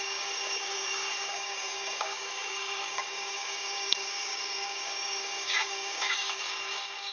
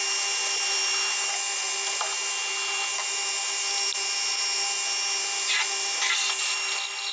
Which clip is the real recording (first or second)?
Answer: second